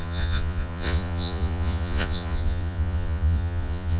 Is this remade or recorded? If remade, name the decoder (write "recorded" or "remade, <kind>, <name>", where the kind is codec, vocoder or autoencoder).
remade, vocoder, Vocos